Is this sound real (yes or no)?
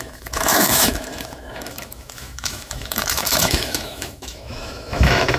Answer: no